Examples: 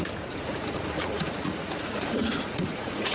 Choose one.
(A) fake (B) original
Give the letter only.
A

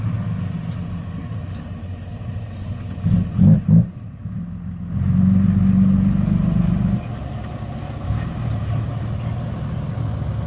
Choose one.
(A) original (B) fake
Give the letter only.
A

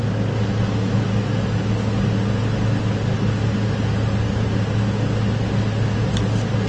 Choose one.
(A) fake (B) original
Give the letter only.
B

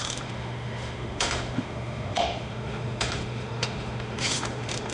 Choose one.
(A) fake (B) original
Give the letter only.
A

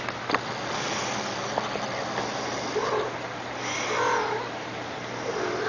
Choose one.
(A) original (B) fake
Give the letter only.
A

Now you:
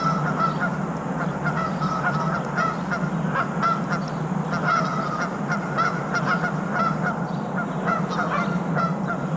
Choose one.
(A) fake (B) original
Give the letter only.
B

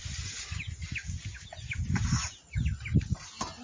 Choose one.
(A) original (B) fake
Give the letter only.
A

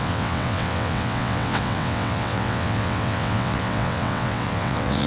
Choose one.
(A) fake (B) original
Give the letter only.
A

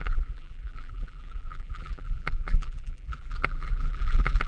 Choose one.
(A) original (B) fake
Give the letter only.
B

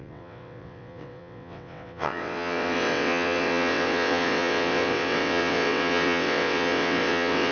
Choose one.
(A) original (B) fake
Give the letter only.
B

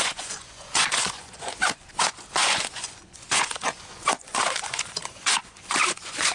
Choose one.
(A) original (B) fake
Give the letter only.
B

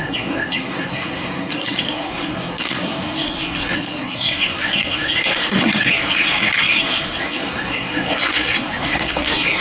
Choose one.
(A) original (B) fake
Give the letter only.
B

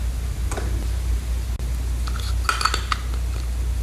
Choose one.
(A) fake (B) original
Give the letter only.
B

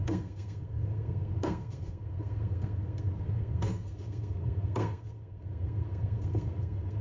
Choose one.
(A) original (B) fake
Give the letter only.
B